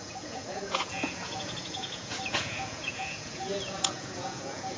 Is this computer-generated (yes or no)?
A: yes